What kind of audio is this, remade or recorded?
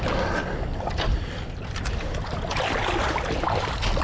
recorded